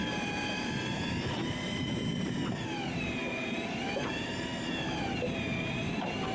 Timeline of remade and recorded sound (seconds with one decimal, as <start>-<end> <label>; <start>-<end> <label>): 0.0-6.3 remade